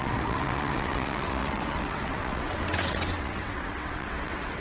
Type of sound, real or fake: fake